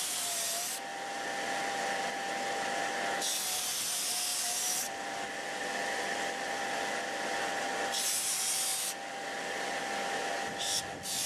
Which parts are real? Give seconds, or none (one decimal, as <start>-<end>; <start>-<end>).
0.0-0.9; 2.0-4.3; 6.6-11.3